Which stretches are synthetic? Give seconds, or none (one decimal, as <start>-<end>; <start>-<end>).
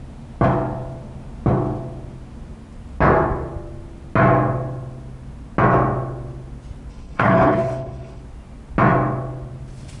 6.9-8.2